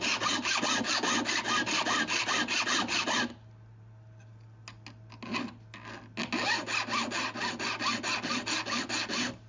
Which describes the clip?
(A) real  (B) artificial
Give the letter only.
A